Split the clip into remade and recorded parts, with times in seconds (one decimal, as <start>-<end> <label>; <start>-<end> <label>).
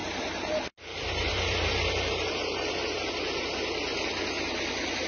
0.0-5.1 recorded